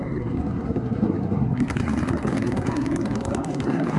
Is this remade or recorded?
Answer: remade